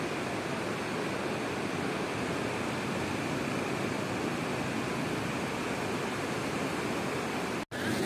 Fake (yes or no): no